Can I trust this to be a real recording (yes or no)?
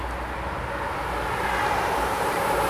yes